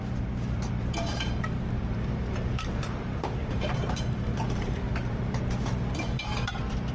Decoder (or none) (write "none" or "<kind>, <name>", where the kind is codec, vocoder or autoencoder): vocoder, BigVGAN v2